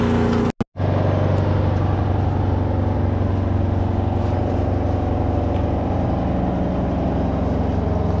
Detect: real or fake real